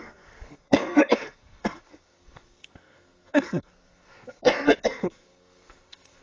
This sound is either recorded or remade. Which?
remade